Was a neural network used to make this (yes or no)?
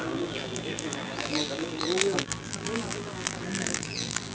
yes